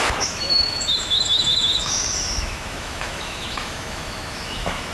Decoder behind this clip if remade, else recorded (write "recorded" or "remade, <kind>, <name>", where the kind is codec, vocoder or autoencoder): remade, autoencoder, DAC-VAE